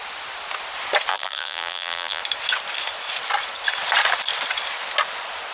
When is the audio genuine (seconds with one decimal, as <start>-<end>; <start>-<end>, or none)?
0.0-1.1; 2.2-5.5

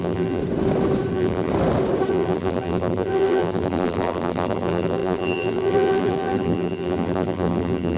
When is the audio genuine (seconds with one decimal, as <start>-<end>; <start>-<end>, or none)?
0.4-1.1; 1.5-2.1

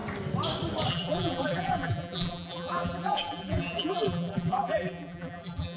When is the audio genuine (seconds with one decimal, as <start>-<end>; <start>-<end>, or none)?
0.0-0.9